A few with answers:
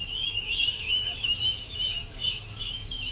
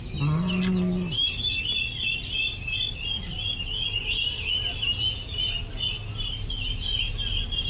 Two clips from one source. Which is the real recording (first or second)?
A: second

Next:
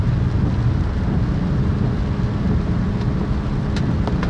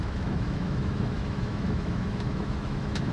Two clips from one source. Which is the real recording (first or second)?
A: first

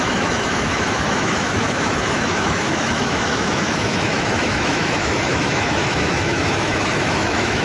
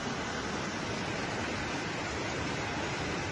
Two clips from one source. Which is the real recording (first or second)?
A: second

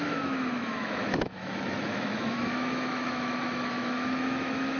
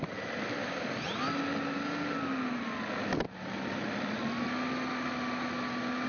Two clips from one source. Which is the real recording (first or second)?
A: second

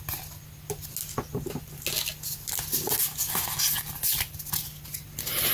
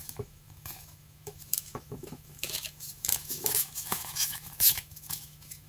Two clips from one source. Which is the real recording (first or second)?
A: first